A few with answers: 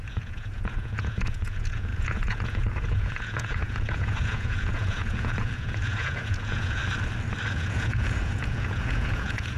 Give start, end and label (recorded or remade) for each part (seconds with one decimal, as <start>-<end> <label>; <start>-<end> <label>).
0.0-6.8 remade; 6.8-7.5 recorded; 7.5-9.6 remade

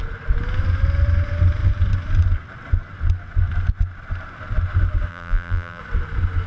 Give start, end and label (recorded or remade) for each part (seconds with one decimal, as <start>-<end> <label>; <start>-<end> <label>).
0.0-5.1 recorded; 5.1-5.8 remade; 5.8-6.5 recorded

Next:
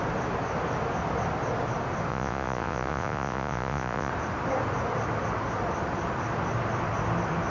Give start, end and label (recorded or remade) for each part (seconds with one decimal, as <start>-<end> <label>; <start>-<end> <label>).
0.0-2.1 recorded; 2.1-4.1 remade; 4.1-7.5 recorded

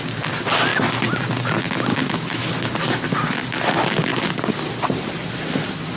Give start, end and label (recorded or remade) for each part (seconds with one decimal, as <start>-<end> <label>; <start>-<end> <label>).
0.0-1.9 recorded; 1.9-2.5 remade; 2.5-6.0 recorded

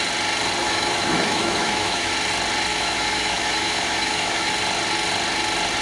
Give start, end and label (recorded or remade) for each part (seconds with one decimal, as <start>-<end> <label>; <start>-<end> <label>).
0.0-0.6 recorded; 0.6-2.1 remade; 2.1-2.7 recorded; 2.7-4.5 remade; 4.5-5.8 recorded

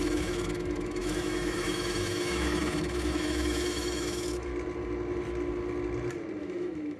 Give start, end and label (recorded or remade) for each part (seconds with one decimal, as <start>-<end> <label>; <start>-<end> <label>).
0.0-4.5 remade; 4.5-6.4 recorded; 6.4-7.0 remade

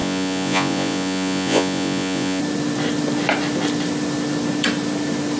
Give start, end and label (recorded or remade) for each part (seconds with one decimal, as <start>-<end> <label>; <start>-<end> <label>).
0.0-2.4 remade; 2.4-5.4 recorded